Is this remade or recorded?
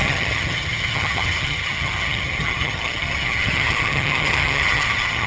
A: remade